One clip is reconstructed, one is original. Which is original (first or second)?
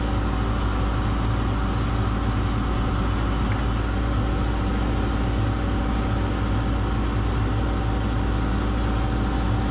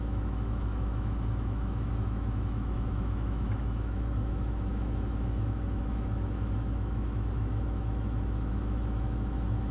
first